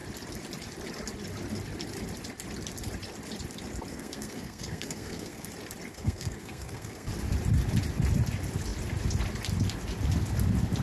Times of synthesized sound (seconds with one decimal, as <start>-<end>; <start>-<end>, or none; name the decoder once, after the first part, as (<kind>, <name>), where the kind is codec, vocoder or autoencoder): 3.9-5.5 (codec, SNAC); 5.9-7.1